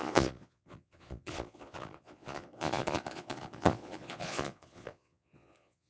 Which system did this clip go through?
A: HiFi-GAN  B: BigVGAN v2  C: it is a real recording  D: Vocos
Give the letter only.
D